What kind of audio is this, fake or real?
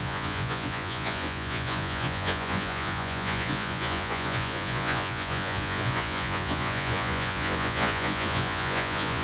fake